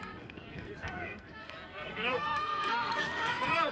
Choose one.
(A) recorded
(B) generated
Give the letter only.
B